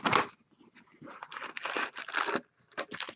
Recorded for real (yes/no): yes